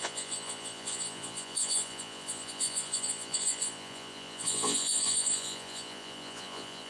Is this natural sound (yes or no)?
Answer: no